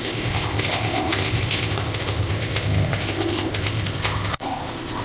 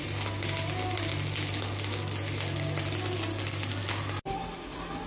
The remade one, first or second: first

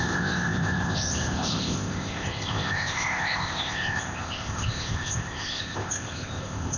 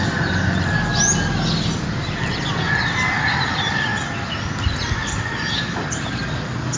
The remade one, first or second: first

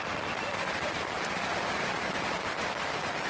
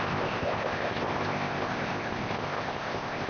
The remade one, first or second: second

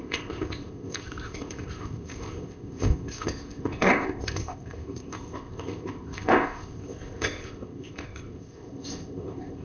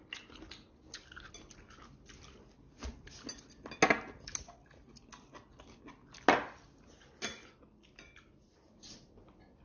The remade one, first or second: first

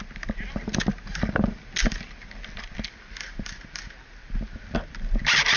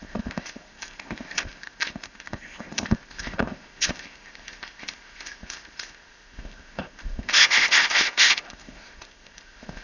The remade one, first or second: second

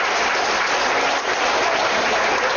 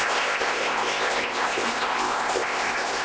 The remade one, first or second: second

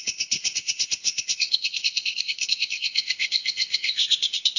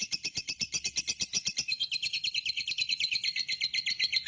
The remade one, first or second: first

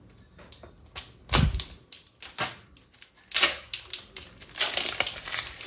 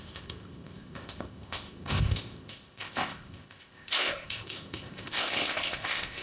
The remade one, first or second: second